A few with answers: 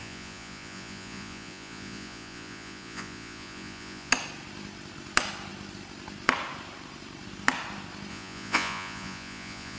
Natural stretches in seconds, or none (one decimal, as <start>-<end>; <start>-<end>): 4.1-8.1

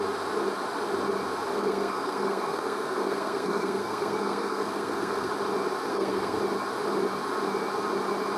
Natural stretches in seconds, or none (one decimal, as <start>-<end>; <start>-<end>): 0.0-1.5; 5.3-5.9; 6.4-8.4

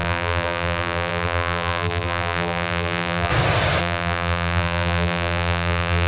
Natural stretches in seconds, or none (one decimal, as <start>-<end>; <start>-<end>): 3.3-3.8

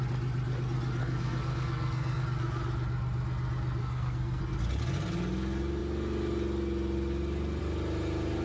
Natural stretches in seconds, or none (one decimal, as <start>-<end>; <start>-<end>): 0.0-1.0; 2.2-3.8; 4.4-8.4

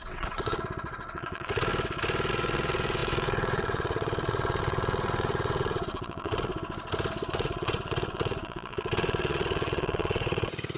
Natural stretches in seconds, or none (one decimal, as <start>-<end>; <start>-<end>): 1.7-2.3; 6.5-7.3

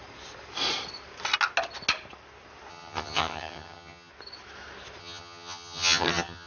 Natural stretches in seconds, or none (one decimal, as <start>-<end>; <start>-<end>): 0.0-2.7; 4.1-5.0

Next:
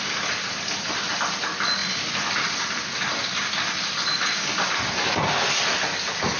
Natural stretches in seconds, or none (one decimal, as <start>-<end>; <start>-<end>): 0.0-6.4